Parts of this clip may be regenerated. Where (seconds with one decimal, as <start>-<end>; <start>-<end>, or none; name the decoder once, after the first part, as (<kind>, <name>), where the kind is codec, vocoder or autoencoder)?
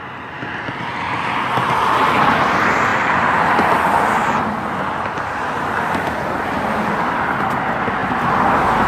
none